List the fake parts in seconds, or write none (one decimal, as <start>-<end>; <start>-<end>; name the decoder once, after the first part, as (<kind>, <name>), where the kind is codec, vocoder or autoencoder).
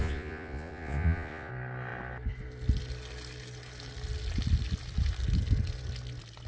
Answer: 0.0-1.5 (vocoder, Vocos)